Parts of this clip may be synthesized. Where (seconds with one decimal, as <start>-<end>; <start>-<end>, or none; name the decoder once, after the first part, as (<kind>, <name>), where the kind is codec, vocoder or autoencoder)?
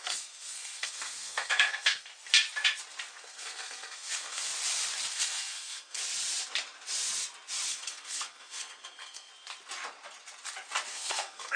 0.0-2.1 (codec, SNAC); 3.1-4.5; 5.1-6.0; 7.7-9.3; 10.9-11.6